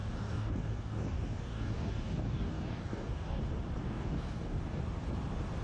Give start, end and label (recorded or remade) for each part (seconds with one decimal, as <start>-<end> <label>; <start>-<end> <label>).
0.0-3.4 remade; 3.4-3.8 recorded; 3.8-4.8 remade; 4.8-5.6 recorded